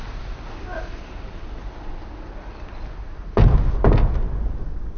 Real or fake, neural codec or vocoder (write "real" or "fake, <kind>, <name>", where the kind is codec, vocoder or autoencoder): real